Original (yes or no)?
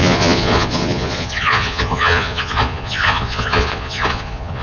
no